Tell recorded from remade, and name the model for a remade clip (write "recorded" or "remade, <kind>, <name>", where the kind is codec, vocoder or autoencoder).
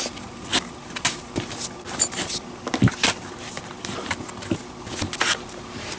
recorded